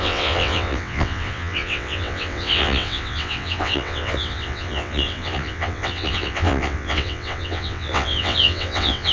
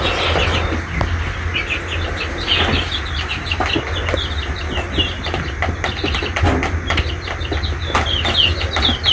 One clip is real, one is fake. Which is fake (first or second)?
first